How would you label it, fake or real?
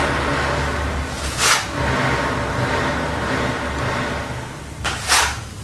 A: real